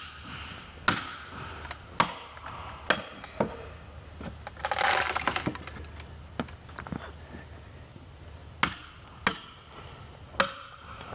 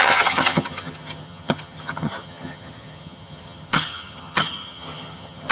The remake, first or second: second